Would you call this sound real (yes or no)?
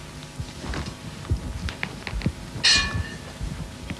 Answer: yes